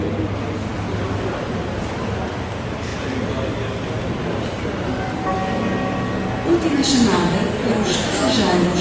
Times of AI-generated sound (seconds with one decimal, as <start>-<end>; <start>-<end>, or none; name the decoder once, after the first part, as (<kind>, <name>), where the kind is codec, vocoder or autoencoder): none